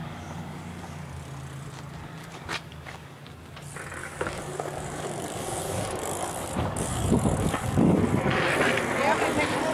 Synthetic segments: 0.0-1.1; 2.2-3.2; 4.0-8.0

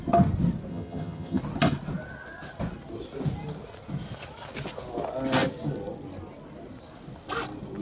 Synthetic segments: 0.7-1.4

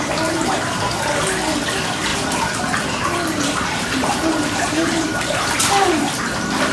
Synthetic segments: 0.0-0.9; 2.1-6.1

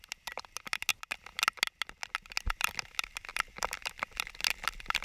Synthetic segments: none

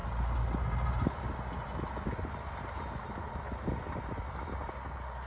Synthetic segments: none